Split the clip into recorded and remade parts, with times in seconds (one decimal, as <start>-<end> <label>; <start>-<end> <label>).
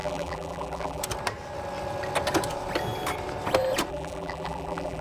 0.0-1.0 remade; 1.0-3.9 recorded; 3.9-5.0 remade